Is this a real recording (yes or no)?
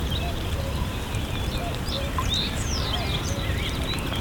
no